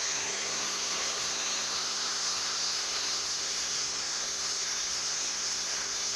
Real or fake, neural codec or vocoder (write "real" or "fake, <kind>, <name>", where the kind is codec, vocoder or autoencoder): fake, codec, SNAC